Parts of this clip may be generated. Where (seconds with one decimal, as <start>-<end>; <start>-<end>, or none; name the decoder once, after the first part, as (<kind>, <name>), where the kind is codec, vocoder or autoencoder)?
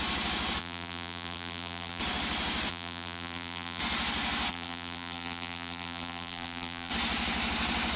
0.6-2.0 (vocoder, BigVGAN v2); 2.7-3.8; 4.5-6.9